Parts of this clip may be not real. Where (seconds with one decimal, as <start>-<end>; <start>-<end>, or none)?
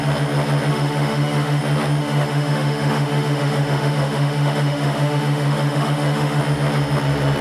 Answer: 0.7-1.6; 2.0-6.4